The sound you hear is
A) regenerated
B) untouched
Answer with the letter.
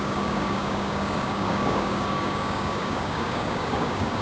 A